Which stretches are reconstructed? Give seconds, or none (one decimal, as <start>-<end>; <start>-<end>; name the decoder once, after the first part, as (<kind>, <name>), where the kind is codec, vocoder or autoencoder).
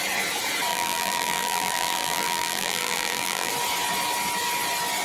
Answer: 0.7-3.5 (vocoder, BigVGAN v2)